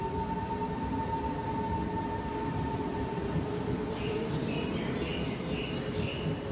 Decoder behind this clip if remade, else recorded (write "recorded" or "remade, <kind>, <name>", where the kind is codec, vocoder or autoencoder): recorded